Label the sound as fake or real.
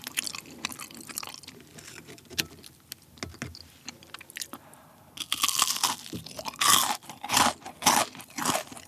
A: real